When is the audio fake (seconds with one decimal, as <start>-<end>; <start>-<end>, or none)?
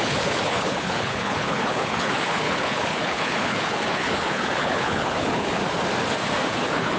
0.0-5.6; 6.5-7.0